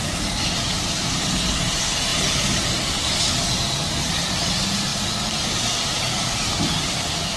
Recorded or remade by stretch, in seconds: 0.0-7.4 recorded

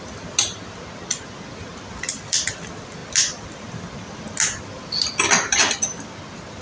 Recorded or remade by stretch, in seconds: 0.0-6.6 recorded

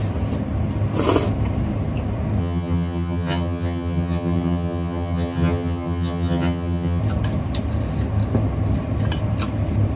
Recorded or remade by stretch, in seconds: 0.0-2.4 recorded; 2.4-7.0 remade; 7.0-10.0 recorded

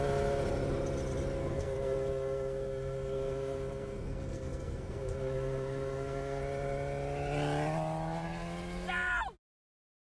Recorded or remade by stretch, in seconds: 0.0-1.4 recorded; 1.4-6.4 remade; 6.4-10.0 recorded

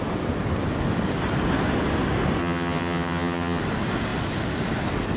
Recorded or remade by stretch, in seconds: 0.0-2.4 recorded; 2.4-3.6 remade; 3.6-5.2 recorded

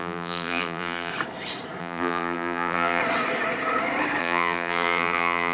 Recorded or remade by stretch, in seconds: 0.0-1.1 remade; 1.1-1.8 recorded; 1.8-3.0 remade; 3.0-4.2 recorded; 4.2-5.5 remade

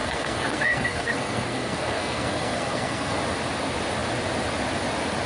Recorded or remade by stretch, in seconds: 0.0-3.2 remade; 3.2-5.3 recorded